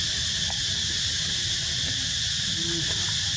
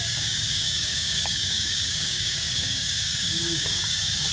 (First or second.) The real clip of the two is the first